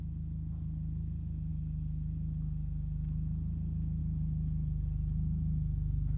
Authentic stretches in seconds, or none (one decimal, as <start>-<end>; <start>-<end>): 0.0-6.2